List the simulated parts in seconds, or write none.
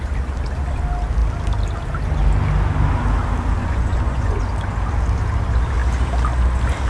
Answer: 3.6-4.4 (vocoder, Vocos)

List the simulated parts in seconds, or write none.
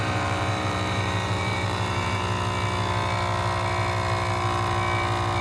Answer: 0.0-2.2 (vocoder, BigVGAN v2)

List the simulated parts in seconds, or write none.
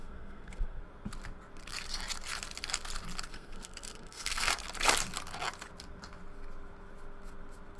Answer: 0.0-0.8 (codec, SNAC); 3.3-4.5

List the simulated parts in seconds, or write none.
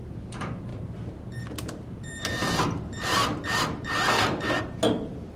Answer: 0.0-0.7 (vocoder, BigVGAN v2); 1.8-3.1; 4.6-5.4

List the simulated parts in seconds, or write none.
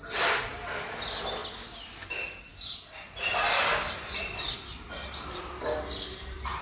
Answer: none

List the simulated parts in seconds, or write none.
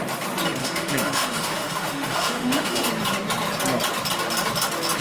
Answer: 0.6-2.9 (autoencoder, DAC-VAE)